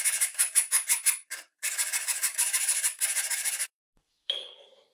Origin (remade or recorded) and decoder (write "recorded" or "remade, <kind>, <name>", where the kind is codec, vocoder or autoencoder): remade, codec, DAC